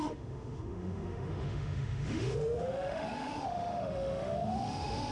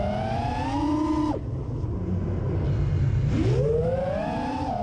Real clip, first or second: second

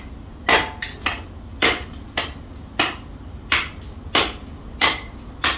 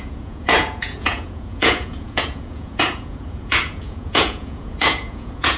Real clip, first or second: first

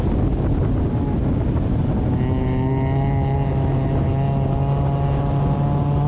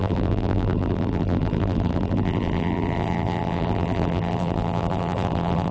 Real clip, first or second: first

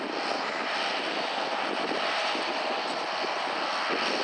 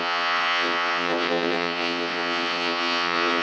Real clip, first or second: first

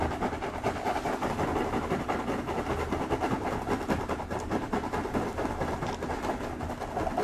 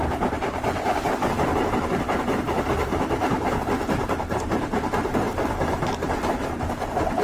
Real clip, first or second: first